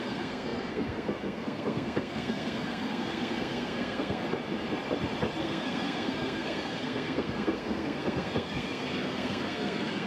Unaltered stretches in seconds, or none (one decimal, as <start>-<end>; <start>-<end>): 4.2-5.4

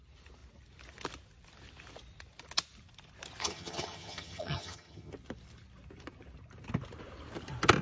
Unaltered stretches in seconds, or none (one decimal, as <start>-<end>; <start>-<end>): 0.0-3.4; 5.1-7.8

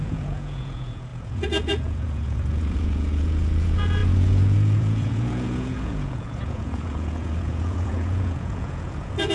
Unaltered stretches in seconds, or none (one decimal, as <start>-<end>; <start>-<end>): none

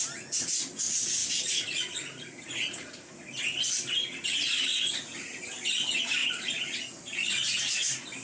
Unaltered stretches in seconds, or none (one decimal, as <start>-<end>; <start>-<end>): 0.0-1.2; 3.4-4.7; 5.3-8.2

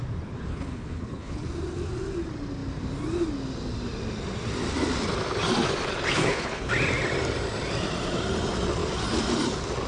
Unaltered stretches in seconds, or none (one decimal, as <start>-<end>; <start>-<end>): 0.0-0.5; 1.4-6.1; 6.7-9.9